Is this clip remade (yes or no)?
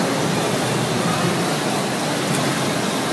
no